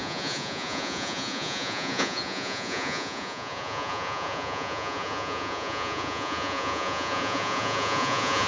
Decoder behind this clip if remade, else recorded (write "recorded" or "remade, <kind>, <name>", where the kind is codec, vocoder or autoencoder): remade, vocoder, Vocos